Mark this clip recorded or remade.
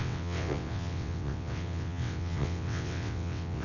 remade